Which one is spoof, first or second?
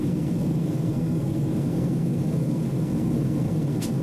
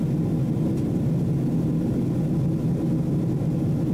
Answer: first